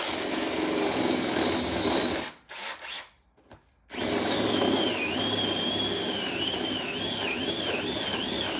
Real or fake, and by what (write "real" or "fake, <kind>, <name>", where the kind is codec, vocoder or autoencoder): real